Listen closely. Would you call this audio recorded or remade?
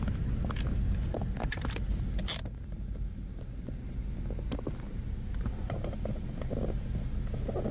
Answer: recorded